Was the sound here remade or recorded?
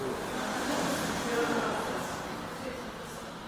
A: recorded